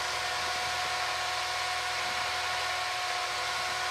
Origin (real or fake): real